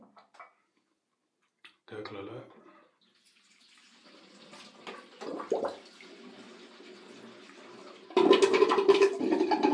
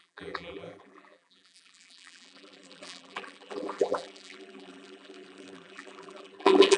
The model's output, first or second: second